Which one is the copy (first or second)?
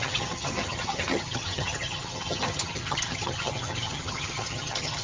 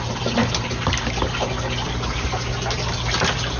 first